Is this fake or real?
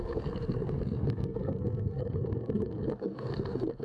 fake